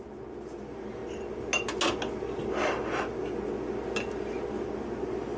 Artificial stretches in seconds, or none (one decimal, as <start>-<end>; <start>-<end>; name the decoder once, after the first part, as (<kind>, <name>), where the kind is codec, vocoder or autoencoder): none